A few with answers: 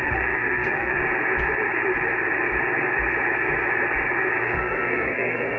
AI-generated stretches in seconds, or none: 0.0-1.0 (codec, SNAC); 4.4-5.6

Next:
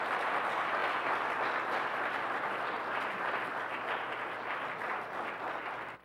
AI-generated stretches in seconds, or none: none